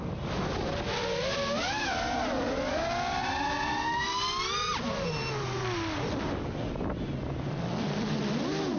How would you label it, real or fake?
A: real